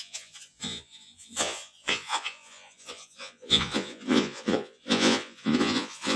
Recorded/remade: remade